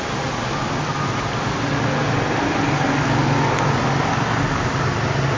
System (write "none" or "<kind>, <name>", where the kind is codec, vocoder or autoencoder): none